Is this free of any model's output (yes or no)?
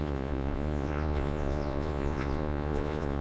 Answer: no